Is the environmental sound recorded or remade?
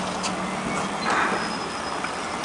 recorded